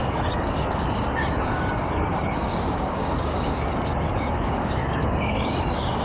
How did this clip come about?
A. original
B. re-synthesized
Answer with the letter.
B